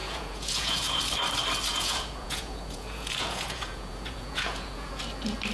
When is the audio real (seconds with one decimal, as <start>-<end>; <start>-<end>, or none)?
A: 1.0-1.7; 5.0-5.5